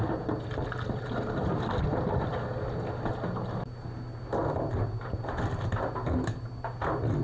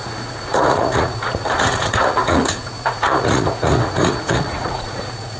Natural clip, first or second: first